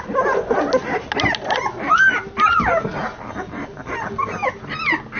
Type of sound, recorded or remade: recorded